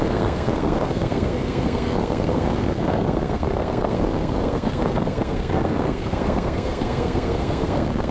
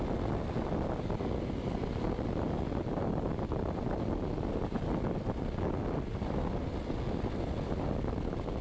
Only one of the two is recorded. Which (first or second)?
second